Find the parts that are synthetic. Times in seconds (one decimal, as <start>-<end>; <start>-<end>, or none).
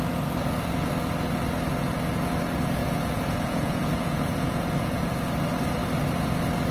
2.8-5.1